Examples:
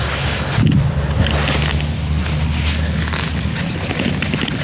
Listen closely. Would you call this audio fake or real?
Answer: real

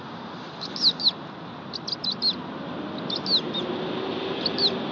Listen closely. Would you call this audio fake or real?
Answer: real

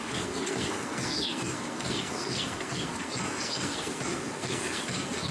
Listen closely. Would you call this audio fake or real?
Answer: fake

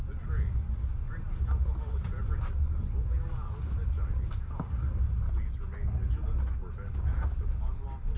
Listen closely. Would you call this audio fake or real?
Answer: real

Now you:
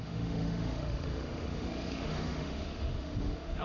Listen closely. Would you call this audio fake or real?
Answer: fake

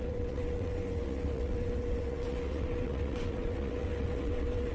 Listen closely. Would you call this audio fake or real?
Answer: fake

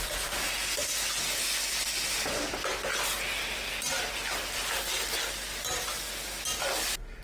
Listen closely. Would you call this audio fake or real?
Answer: real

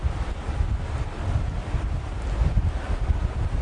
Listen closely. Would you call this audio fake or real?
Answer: real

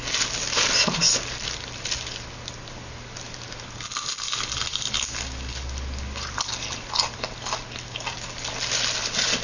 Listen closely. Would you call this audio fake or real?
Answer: real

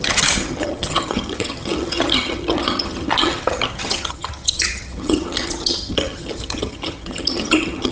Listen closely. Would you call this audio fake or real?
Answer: fake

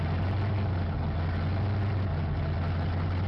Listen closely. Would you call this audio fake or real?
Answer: real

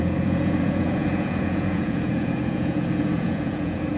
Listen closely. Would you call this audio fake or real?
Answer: fake